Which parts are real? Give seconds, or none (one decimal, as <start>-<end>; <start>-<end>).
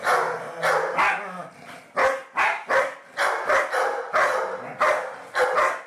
0.0-5.9